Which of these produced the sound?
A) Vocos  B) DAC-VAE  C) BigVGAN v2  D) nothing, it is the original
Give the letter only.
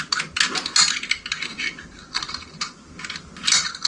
D